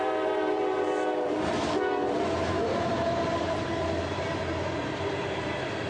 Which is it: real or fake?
fake